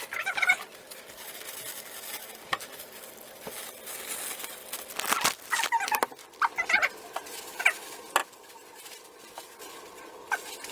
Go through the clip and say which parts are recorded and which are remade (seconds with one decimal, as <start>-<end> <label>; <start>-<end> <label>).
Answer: 0.0-8.2 recorded; 8.2-9.6 remade; 9.6-10.7 recorded

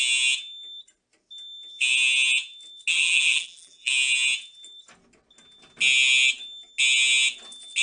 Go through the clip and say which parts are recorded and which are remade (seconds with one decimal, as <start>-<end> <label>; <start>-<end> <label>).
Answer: 0.0-2.9 recorded; 2.9-3.9 remade; 3.9-7.8 recorded